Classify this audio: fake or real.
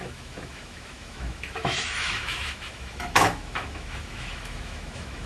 fake